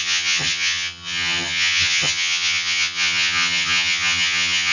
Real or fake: fake